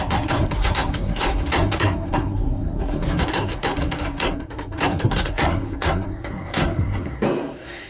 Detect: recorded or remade remade